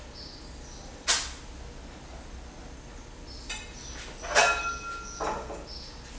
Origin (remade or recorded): recorded